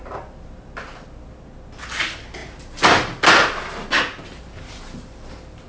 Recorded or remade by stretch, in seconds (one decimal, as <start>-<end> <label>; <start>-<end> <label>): 0.0-5.7 recorded